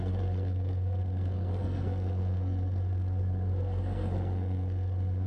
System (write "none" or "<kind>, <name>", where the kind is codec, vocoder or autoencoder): codec, SNAC